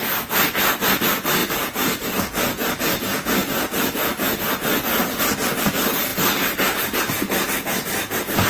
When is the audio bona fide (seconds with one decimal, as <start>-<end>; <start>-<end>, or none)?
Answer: 0.0-8.5